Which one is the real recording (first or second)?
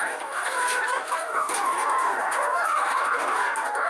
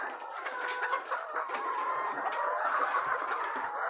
second